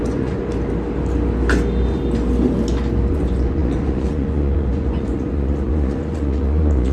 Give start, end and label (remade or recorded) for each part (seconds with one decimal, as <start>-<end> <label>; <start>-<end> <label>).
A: 0.0-0.4 remade; 0.4-3.1 recorded; 3.1-6.9 remade